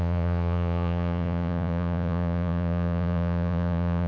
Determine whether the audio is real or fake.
fake